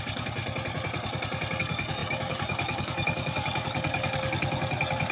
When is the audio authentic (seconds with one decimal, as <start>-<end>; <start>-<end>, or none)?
0.4-1.6